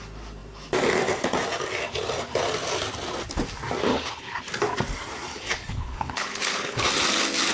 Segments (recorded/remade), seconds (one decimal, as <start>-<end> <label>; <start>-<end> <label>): 0.0-3.9 recorded; 3.9-4.4 remade; 4.4-5.3 recorded; 5.3-6.9 remade; 6.9-7.5 recorded